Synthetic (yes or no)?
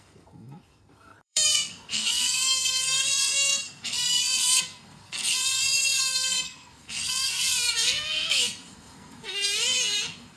yes